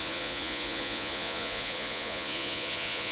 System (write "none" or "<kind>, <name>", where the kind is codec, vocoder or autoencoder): vocoder, Vocos